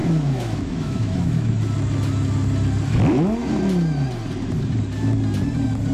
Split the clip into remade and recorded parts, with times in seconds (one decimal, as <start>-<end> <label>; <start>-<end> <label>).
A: 0.0-1.5 remade; 1.5-5.9 recorded